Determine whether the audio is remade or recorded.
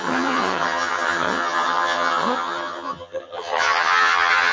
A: remade